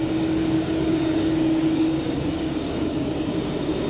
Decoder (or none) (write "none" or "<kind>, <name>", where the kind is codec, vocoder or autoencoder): codec, DAC